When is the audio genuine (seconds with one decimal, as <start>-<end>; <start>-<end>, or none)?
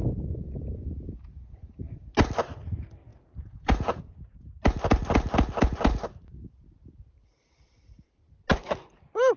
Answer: 1.7-3.1; 4.0-9.4